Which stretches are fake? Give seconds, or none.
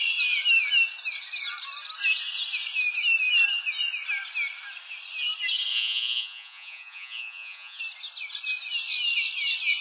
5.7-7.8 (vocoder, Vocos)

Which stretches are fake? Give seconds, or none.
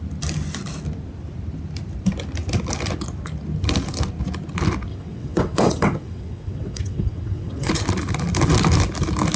4.9-7.7 (vocoder, WaveNeXt)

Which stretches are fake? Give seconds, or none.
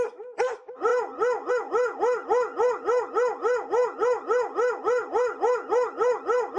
none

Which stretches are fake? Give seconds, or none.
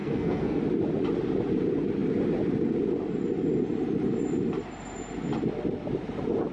0.0-0.6 (codec, SNAC)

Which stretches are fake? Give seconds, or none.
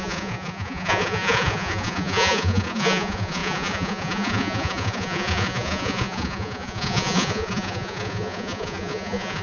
0.0-9.4 (vocoder, Vocos)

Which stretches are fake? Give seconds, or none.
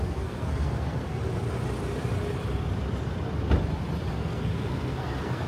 0.0-1.2 (codec, SNAC); 4.1-5.5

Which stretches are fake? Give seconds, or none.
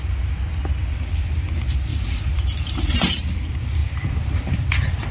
1.9-3.2 (vocoder, BigVGAN v2); 3.8-4.6